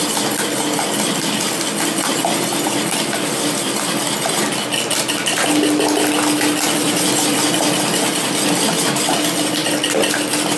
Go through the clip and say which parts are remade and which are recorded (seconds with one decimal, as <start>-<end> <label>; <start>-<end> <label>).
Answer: 0.0-10.6 recorded